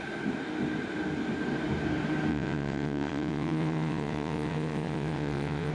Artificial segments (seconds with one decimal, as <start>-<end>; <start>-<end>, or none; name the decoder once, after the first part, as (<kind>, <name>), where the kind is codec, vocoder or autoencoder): 2.3-5.7 (vocoder, WaveNeXt)